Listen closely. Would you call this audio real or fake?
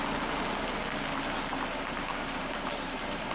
real